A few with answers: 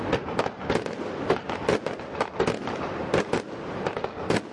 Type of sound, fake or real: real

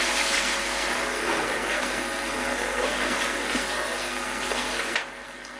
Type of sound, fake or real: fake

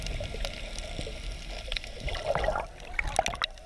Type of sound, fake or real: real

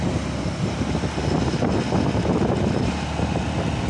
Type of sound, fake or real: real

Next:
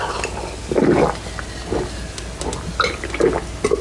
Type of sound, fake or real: real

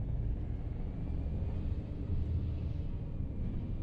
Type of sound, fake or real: real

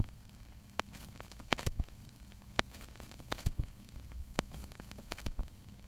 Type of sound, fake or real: fake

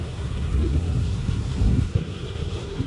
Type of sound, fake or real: fake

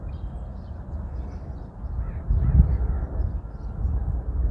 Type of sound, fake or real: real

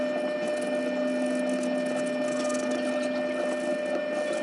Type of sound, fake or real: real